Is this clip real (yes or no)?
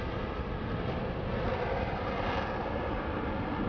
yes